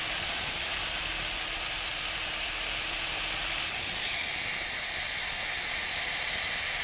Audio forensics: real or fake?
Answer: fake